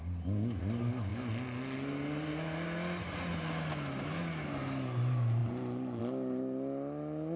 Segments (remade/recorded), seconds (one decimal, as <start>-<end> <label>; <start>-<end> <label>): 0.0-7.4 recorded